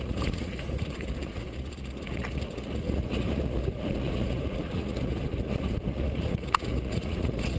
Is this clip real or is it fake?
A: fake